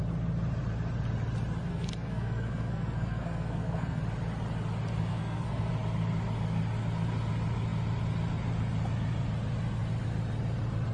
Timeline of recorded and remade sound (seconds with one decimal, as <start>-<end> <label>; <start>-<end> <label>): 0.0-1.7 recorded; 1.7-4.0 remade; 4.0-5.1 recorded; 5.1-5.7 remade; 5.7-10.9 recorded